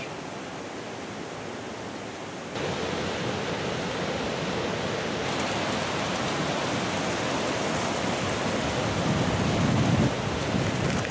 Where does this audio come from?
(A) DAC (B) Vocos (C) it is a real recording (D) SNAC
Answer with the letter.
C